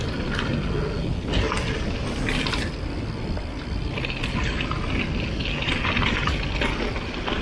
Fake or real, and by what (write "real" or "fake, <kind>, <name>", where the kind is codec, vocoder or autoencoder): real